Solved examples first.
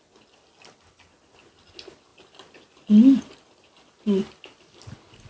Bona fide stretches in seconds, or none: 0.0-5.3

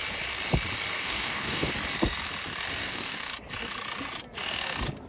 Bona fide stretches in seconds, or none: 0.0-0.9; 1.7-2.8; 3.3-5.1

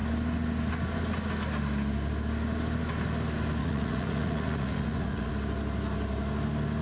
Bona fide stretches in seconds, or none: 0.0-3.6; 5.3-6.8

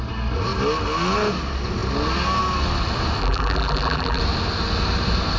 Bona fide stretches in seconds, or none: 0.0-3.2; 4.2-5.4

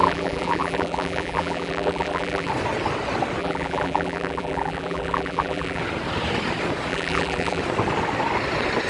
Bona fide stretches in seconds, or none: 2.5-3.4; 5.8-6.9; 7.6-8.9

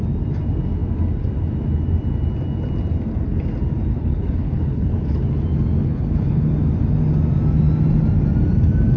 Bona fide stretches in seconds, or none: 0.0-3.9; 5.3-5.8; 6.5-9.0

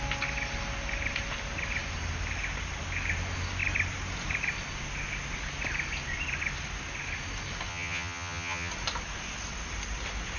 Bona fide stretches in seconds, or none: 0.0-7.7; 8.7-10.4